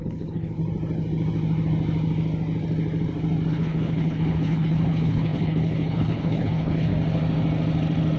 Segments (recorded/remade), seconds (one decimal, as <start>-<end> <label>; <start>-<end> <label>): 0.0-0.6 remade; 0.6-3.5 recorded; 3.5-6.9 remade; 6.9-8.2 recorded